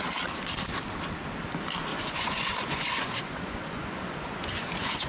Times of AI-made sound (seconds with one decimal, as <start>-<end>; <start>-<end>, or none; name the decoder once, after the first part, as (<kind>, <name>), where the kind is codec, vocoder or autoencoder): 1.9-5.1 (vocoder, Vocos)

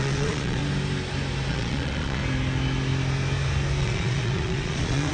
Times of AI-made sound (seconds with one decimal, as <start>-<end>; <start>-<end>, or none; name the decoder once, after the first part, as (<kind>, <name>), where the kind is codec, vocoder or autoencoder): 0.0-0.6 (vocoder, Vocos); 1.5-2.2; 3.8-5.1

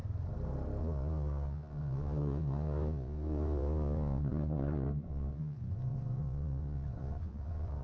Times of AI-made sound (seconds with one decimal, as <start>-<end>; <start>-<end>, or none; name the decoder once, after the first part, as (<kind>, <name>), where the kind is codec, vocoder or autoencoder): 0.8-7.8 (vocoder, Vocos)

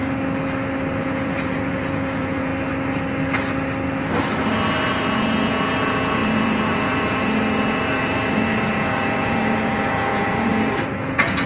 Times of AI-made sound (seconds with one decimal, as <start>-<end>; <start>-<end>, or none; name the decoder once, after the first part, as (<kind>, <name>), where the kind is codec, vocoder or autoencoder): 1.0-2.5 (vocoder, Vocos); 4.9-10.5; 11.0-11.5